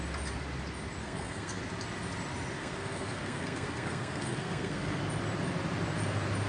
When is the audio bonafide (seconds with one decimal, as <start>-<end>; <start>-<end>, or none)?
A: 0.0-1.0; 1.6-2.6; 5.0-6.5